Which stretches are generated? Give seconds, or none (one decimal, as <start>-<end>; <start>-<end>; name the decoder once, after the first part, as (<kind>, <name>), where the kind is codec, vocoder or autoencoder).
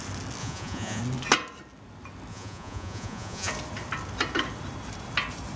0.4-1.0 (vocoder, Vocos); 2.3-3.5